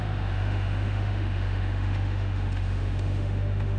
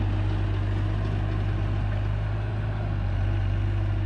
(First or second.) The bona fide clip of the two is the second